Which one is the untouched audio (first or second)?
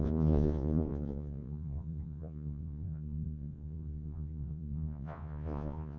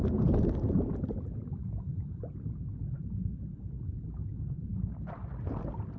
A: second